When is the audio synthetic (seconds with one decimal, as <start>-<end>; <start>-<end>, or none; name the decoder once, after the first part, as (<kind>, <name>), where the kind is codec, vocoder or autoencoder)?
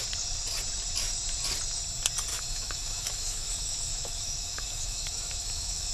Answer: 2.3-5.9 (autoencoder, DAC-VAE)